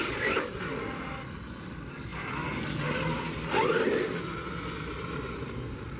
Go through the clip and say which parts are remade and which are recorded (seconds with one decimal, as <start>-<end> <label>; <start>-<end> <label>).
0.0-6.0 recorded